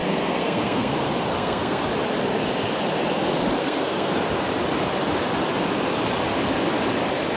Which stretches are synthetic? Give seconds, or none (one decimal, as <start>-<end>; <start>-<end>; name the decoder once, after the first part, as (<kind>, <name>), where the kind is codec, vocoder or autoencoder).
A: 0.0-0.9 (codec, SNAC); 1.3-1.8; 3.6-4.1